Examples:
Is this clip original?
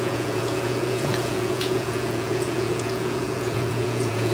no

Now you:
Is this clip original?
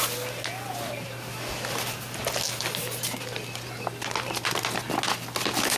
yes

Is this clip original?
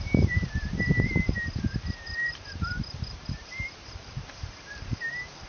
no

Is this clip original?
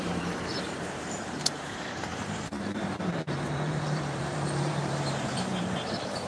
no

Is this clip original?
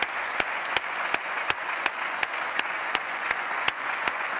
no